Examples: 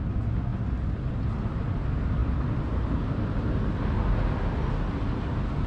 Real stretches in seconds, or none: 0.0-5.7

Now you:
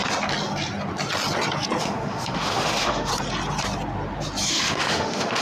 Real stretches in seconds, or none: 0.0-1.8; 3.1-4.5

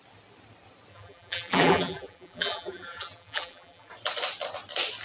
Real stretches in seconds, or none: 0.0-0.9; 3.9-5.0